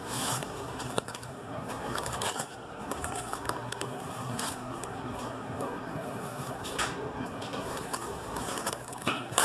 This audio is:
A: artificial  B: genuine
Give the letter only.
A